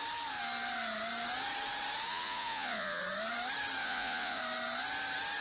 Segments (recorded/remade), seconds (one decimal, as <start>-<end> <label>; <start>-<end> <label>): 0.0-2.1 recorded; 2.1-3.0 remade; 3.0-3.8 recorded; 3.8-4.4 remade; 4.4-5.4 recorded